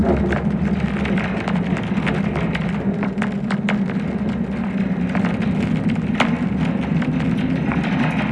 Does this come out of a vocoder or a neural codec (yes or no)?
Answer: no